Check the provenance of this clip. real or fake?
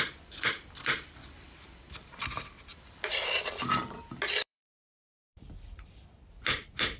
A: fake